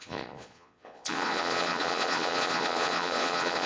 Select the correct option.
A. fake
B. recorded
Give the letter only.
A